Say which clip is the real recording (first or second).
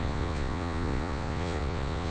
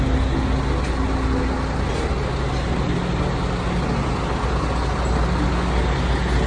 second